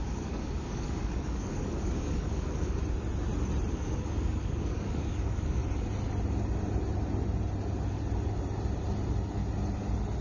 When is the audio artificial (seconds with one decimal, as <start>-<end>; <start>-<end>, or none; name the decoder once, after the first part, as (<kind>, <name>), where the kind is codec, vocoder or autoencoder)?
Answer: 0.0-2.8 (codec, DAC); 3.7-5.6